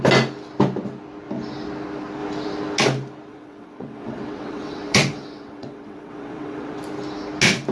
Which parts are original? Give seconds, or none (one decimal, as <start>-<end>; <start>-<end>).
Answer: 0.0-3.3; 6.8-7.7